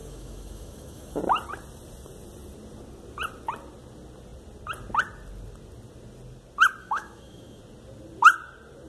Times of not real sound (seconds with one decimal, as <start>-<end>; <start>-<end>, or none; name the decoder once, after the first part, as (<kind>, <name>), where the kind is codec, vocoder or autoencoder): 0.0-1.2 (autoencoder, DAC-VAE); 6.8-7.6